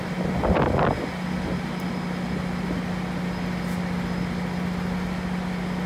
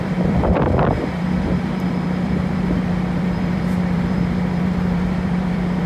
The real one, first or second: first